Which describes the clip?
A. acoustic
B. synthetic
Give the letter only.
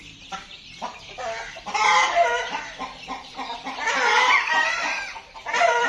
B